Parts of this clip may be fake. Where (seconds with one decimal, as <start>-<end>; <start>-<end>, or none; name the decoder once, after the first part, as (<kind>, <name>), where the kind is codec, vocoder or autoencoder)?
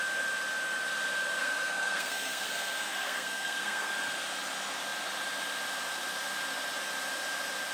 1.4-3.9 (codec, SNAC)